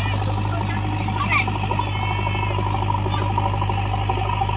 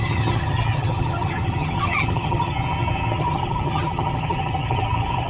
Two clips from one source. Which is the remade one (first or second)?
second